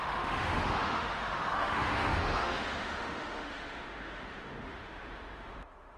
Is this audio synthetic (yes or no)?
yes